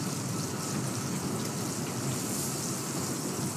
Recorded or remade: recorded